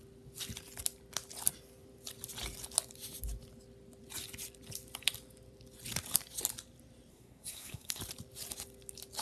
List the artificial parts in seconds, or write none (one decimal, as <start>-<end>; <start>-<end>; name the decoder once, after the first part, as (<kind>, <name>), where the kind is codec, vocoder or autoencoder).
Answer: 7.1-8.0 (codec, SNAC)